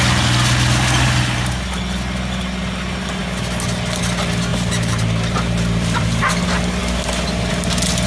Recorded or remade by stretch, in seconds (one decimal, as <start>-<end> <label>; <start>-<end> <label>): 0.0-4.5 recorded; 4.5-6.2 remade; 6.2-8.1 recorded